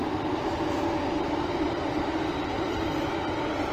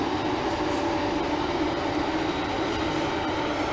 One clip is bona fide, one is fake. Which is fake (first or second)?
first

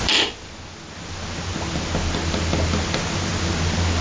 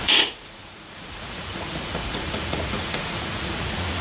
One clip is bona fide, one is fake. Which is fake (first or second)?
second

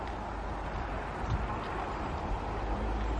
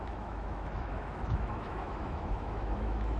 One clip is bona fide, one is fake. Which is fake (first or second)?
second